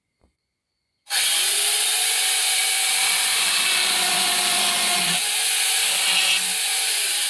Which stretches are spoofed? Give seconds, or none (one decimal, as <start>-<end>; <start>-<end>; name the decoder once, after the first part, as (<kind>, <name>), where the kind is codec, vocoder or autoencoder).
0.0-5.8 (vocoder, Vocos); 6.6-7.3